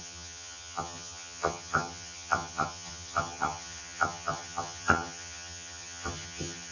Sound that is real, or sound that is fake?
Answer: fake